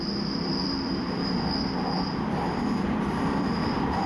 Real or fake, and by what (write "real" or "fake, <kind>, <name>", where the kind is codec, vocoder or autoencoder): fake, vocoder, BigVGAN v2